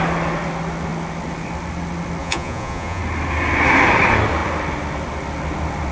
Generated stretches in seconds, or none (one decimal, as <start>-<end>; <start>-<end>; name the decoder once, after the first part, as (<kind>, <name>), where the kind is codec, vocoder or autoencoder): 2.2-3.0 (vocoder, Vocos)